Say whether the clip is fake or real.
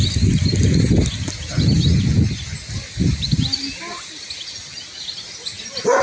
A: real